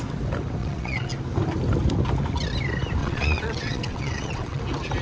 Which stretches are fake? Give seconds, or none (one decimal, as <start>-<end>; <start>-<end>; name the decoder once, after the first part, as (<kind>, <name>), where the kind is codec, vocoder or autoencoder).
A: 0.6-1.1 (vocoder, WaveNeXt); 3.0-4.6